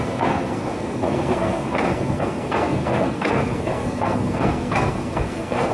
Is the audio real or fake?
fake